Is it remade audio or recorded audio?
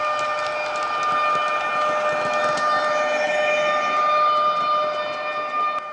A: recorded